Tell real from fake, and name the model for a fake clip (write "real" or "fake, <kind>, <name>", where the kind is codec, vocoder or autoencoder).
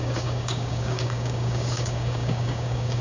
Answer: fake, codec, DAC